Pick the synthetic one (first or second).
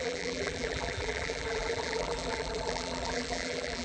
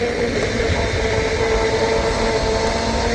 first